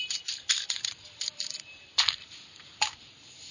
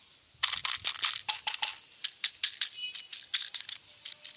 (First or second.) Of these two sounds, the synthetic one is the first